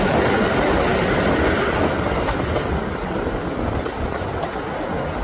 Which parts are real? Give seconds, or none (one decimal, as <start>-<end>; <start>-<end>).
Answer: 0.0-5.2